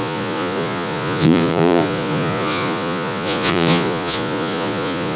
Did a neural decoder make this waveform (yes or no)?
yes